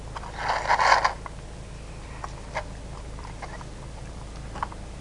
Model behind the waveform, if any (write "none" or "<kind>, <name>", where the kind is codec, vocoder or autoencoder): none